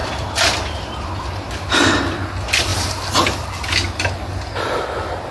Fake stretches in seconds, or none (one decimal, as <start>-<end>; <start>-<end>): 0.0-1.5